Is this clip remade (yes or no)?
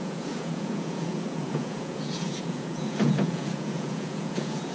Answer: yes